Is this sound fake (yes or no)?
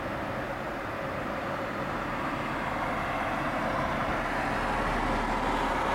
no